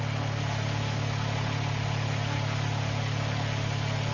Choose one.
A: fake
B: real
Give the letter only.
B